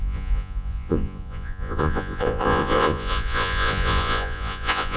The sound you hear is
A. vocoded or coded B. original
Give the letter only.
A